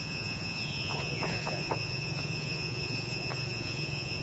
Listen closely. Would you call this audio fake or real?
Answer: fake